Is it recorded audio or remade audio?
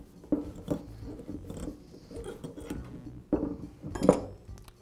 recorded